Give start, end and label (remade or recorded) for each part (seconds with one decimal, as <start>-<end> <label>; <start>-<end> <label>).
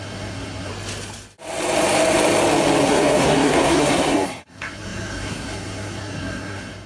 0.0-0.7 remade; 0.7-2.8 recorded; 2.8-6.9 remade